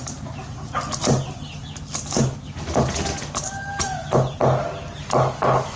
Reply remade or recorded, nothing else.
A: recorded